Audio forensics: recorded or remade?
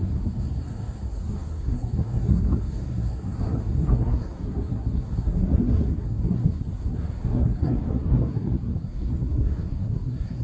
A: remade